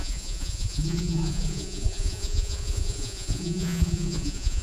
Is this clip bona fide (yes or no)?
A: no